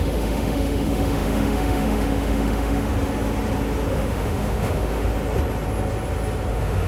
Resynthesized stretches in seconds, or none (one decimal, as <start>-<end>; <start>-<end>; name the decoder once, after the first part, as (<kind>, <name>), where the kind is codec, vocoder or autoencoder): 0.0-2.9 (autoencoder, DAC-VAE); 3.9-5.1; 6.5-6.9